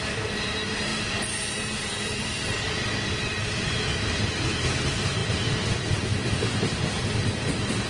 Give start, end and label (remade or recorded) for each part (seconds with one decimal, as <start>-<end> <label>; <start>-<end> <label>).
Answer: 0.0-7.9 recorded